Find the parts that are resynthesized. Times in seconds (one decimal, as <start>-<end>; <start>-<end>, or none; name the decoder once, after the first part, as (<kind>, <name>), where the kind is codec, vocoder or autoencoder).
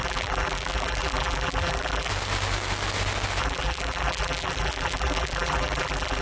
0.0-2.1 (vocoder, BigVGAN v2); 3.4-6.2